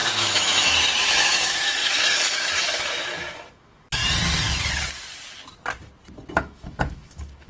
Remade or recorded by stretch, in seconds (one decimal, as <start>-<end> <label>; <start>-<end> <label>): 0.0-4.0 remade; 4.0-6.3 recorded; 6.3-7.5 remade